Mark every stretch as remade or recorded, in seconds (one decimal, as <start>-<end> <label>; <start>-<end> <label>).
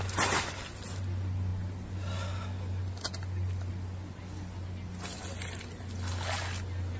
0.0-7.0 recorded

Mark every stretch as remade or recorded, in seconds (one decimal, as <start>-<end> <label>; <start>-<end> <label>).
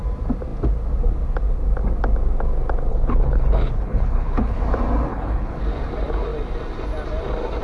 0.0-2.9 recorded; 2.9-4.6 remade; 4.6-5.1 recorded; 5.1-5.6 remade; 5.6-7.6 recorded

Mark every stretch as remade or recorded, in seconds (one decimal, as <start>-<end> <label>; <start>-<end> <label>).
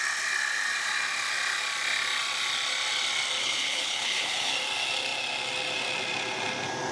0.0-3.4 recorded; 3.4-4.5 remade; 4.5-6.9 recorded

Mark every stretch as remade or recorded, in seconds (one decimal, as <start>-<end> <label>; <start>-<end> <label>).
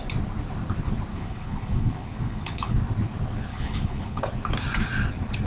0.0-1.1 recorded; 1.1-2.8 remade; 2.8-3.5 recorded; 3.5-4.2 remade; 4.2-5.5 recorded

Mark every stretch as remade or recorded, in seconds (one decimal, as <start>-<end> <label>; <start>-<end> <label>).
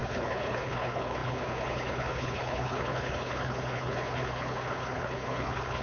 0.0-5.8 remade